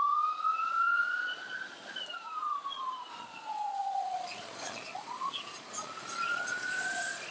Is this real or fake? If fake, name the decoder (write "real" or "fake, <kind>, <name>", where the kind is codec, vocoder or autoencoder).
fake, vocoder, Vocos